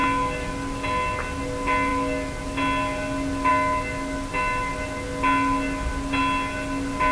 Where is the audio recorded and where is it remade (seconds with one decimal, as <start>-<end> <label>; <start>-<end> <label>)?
0.0-7.1 recorded